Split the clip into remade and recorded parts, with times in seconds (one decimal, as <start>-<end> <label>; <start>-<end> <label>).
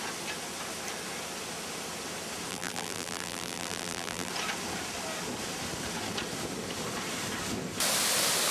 0.0-2.5 recorded; 2.5-4.3 remade; 4.3-8.5 recorded